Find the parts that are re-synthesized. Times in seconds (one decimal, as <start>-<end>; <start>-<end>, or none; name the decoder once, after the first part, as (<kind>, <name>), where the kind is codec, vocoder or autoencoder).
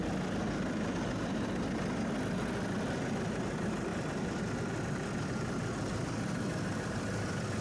none